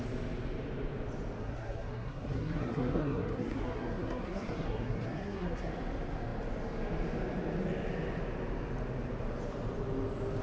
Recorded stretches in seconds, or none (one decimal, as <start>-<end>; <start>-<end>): 0.0-1.4; 5.7-10.4